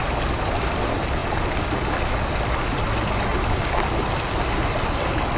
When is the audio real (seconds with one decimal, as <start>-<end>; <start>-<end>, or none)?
0.0-1.2; 1.9-3.3; 4.1-5.4

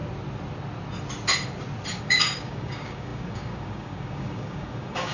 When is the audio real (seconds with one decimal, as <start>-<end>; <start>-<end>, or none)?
0.0-2.0

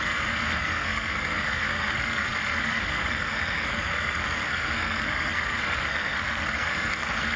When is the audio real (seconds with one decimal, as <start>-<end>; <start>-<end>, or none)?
none

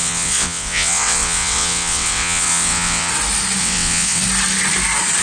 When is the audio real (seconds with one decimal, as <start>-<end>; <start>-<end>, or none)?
3.1-3.6; 4.2-5.2

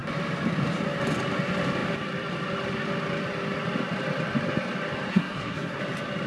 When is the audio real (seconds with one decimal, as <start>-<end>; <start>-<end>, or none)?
0.0-5.1; 5.8-6.3

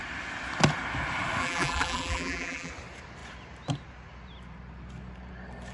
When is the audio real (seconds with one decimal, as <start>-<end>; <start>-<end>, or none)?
0.0-1.4; 2.7-5.7